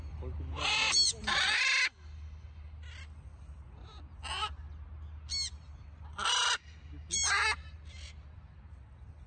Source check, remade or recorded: recorded